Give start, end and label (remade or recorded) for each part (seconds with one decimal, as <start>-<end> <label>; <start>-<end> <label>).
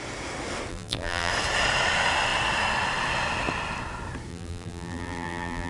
0.0-0.7 recorded; 0.7-1.3 remade; 1.3-4.3 recorded; 4.3-5.7 remade